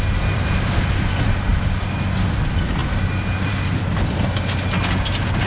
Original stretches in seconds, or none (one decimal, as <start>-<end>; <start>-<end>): 0.0-5.5